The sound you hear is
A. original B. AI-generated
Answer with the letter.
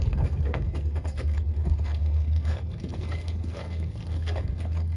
B